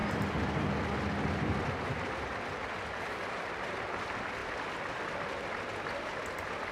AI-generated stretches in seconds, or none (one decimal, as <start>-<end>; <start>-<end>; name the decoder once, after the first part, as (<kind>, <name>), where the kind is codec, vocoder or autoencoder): none